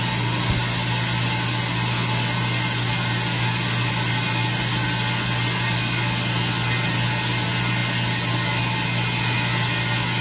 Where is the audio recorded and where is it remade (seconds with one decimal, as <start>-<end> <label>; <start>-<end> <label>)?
0.0-10.2 recorded